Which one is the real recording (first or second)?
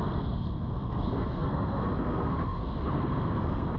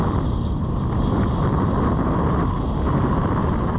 second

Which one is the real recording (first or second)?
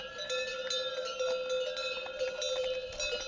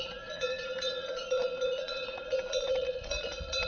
first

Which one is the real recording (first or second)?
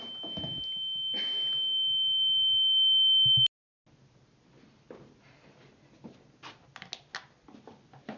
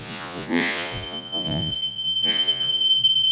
first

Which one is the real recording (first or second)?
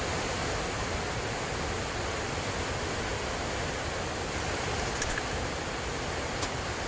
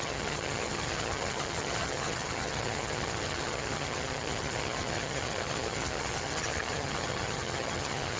first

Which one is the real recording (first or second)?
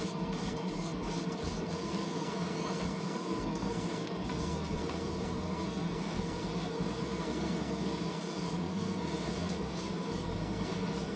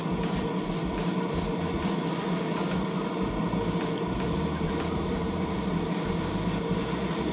second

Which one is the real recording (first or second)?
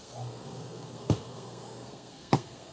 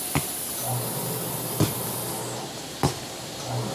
second